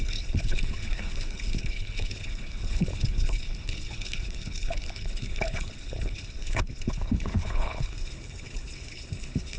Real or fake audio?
fake